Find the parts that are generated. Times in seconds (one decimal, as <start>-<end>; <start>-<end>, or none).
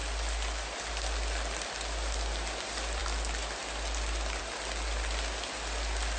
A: none